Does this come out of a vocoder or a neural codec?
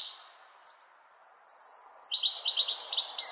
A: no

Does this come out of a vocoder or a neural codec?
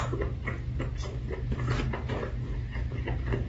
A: no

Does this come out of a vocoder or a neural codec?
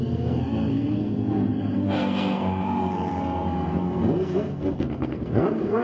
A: yes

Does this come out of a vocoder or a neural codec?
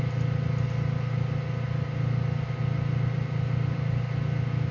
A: no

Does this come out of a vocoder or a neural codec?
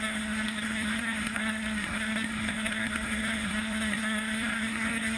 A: yes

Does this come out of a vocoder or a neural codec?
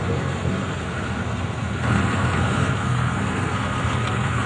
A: yes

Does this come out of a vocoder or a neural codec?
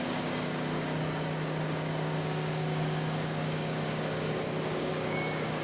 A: yes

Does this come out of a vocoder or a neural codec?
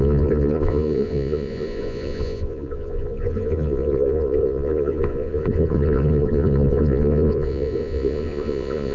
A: yes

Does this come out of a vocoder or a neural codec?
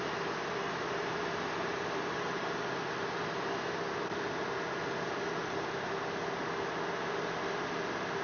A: no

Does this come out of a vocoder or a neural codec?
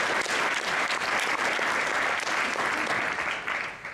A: no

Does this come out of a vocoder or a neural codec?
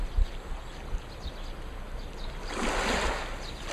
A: no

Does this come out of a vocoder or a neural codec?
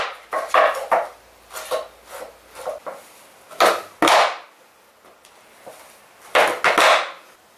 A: no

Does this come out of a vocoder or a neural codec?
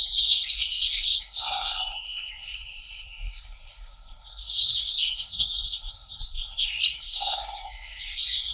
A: yes